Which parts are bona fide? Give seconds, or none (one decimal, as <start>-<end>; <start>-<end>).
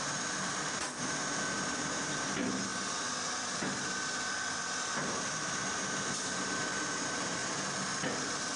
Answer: 2.7-5.3; 7.4-8.6